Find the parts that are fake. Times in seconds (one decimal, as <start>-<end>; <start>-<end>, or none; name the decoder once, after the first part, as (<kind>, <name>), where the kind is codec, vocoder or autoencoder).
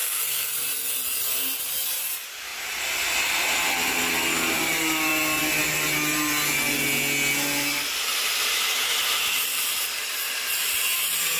0.0-0.5 (codec, SNAC)